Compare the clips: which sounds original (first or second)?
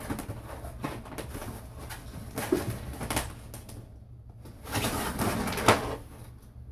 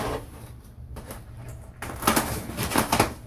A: first